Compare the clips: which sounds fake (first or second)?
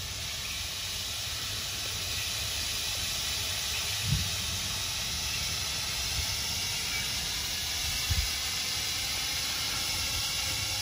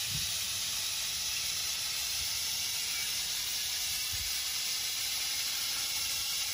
second